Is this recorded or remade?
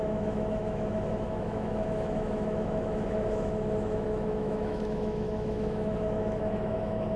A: remade